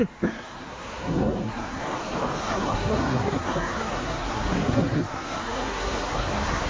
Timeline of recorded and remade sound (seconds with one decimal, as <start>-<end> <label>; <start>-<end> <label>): 0.0-1.8 remade; 1.8-2.4 recorded; 2.4-6.7 remade